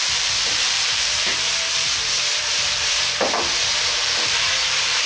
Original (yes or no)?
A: no